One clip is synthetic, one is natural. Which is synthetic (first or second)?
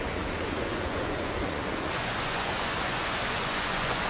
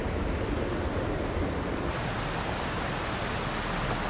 first